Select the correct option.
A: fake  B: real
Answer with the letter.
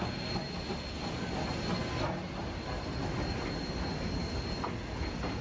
B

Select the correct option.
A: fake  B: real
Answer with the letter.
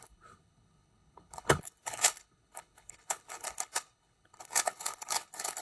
A